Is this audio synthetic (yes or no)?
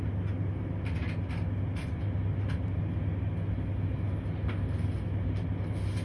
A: no